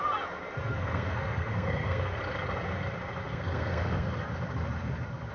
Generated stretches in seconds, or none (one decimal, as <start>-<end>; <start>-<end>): 0.7-2.2; 3.2-4.1

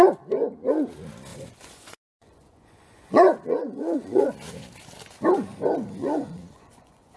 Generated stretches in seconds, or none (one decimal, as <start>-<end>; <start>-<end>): 1.3-4.2; 6.0-7.2

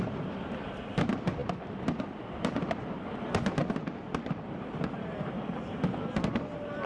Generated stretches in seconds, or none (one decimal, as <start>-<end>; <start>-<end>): none

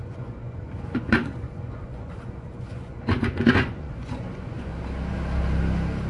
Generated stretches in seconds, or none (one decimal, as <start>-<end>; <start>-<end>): 0.0-4.7

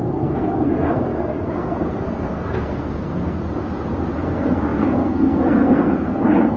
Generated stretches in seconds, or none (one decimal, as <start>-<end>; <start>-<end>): 0.0-3.4; 4.2-6.6